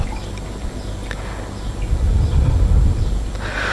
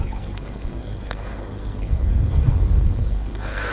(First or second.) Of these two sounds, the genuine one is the first